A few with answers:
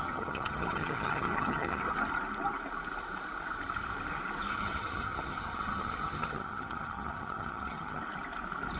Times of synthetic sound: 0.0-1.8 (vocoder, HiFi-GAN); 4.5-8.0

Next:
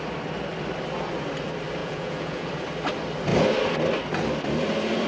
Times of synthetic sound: 1.8-2.5 (vocoder, Vocos)

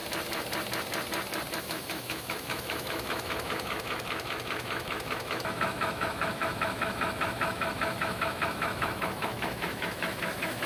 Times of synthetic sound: 1.6-10.7 (autoencoder, DAC-VAE)

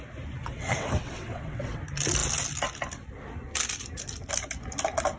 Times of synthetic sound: 0.4-1.8 (vocoder, WaveNeXt)